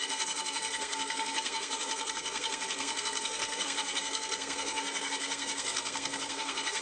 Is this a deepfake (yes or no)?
yes